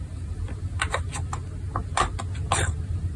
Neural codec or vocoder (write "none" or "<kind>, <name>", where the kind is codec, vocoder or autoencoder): none